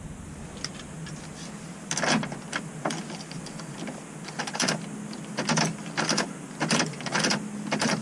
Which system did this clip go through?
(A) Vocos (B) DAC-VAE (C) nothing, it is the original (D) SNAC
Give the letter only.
C